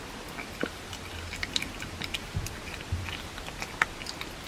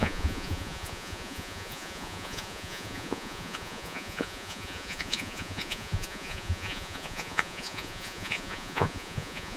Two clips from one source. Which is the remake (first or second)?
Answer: second